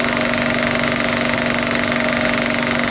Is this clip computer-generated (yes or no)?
no